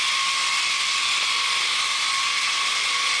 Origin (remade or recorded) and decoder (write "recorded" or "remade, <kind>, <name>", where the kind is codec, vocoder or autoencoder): recorded